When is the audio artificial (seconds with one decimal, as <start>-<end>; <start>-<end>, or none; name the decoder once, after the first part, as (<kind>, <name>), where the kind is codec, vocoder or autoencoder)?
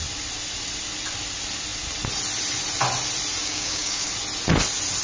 3.4-4.1 (codec, DAC)